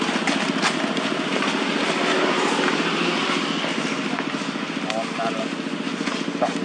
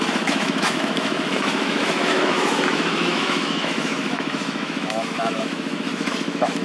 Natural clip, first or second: first